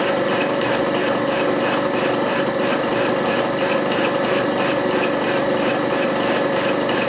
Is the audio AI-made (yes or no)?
no